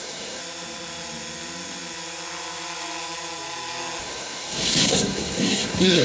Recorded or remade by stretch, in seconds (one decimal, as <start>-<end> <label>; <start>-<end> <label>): 0.0-0.4 remade; 0.4-4.0 recorded; 4.0-6.0 remade